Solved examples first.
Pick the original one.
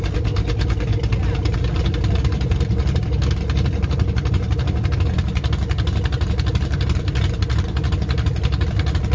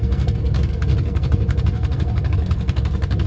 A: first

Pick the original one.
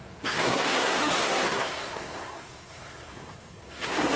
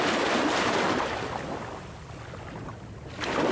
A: second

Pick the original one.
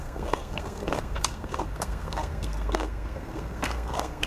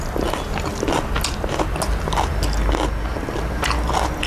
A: second